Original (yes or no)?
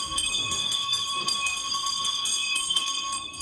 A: no